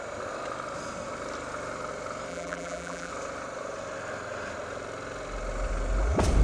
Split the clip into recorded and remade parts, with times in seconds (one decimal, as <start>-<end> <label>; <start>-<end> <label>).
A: 0.0-2.3 recorded; 2.3-3.1 remade; 3.1-6.4 recorded